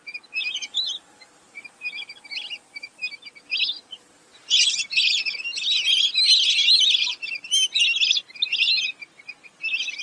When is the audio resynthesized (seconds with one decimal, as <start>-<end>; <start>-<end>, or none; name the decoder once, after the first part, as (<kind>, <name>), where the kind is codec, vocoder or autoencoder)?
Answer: none